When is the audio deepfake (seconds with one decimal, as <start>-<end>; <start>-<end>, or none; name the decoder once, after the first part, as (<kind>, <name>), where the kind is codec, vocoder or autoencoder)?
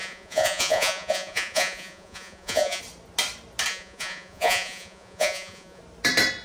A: 0.0-2.8 (vocoder, Vocos); 3.7-5.8